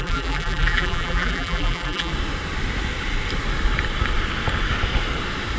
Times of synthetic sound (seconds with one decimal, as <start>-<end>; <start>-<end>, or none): 0.0-2.1